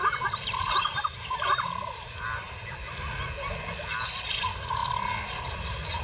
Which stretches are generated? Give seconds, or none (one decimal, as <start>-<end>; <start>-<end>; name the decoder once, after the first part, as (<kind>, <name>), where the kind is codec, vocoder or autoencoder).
0.4-2.6 (vocoder, BigVGAN v2)